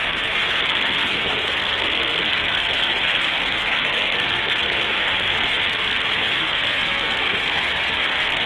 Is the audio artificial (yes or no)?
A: yes